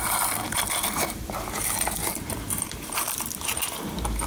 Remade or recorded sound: remade